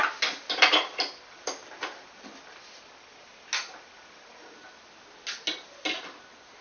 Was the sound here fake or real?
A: real